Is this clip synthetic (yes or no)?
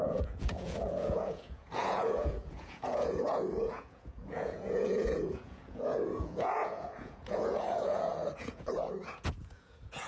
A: yes